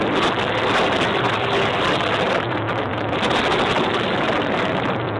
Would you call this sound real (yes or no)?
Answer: yes